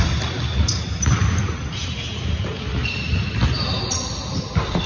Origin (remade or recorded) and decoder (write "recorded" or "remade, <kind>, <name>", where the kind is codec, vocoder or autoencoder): recorded